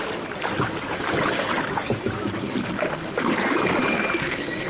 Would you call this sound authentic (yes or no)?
no